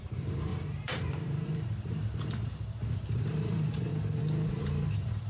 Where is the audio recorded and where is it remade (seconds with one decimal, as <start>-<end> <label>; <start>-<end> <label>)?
0.0-3.9 remade; 3.9-4.6 recorded; 4.6-5.3 remade